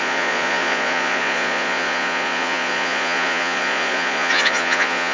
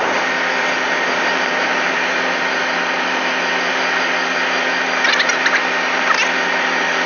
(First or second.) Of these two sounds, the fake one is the first